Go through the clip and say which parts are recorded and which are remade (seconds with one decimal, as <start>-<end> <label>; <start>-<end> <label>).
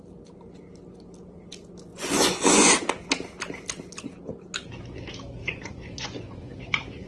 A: 0.0-1.9 recorded; 1.9-2.7 remade; 2.7-5.4 recorded; 5.4-7.1 remade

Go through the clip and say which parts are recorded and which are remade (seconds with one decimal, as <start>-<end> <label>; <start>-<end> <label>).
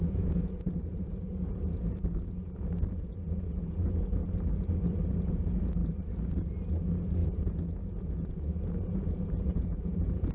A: 0.0-4.2 remade; 4.2-5.1 recorded; 5.1-5.8 remade; 5.8-6.7 recorded; 6.7-10.3 remade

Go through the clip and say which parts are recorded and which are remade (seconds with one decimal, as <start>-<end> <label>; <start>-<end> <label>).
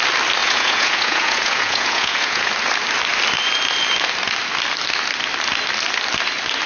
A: 0.0-0.4 recorded; 0.4-2.5 remade; 2.5-6.7 recorded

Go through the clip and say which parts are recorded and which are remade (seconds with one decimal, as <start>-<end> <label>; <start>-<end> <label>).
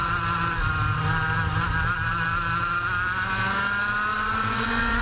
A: 0.0-4.1 recorded; 4.1-5.0 remade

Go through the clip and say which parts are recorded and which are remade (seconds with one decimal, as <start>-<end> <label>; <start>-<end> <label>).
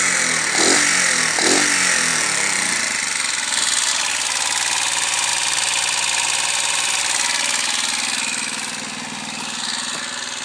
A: 0.0-10.4 recorded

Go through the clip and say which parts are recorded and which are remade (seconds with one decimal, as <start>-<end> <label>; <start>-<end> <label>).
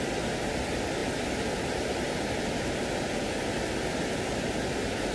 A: 0.0-5.1 recorded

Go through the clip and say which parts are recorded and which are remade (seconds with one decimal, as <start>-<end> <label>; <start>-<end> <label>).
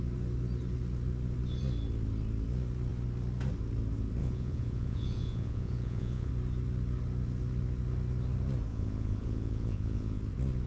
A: 0.0-4.2 recorded; 4.2-6.3 remade; 6.3-8.7 recorded; 8.7-10.2 remade; 10.2-10.7 recorded